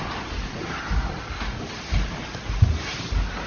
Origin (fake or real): real